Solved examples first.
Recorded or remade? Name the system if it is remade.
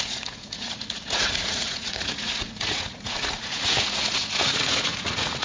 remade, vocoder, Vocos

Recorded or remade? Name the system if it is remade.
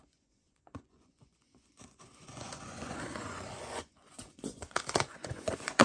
remade, vocoder, Vocos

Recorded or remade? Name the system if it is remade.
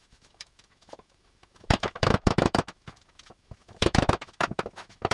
remade, autoencoder, DAC-VAE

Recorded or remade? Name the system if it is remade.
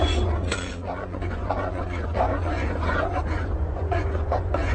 remade, vocoder, Vocos